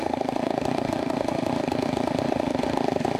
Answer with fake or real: fake